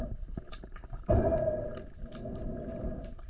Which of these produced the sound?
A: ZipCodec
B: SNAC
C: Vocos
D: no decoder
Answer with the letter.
D